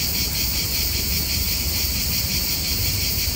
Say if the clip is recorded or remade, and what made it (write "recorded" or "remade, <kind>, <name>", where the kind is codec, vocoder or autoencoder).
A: remade, vocoder, BigVGAN v2